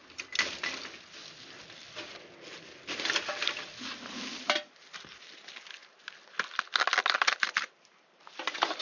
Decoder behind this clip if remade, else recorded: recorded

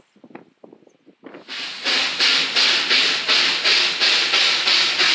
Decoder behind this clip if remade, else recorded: recorded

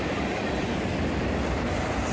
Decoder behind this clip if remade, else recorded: recorded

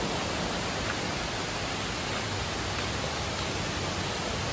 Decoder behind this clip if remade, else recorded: recorded